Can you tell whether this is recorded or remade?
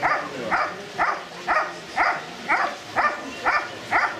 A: recorded